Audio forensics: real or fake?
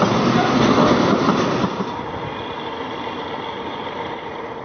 real